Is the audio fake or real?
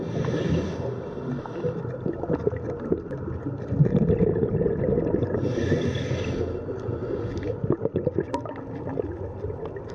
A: real